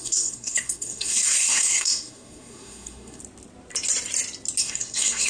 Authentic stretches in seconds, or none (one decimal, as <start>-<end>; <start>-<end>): 3.2-4.6